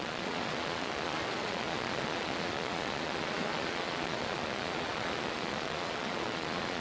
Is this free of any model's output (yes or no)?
no